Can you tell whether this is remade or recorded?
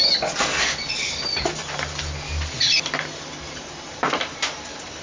recorded